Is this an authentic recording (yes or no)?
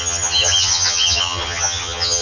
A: no